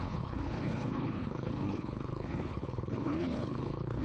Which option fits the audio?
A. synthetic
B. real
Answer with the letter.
A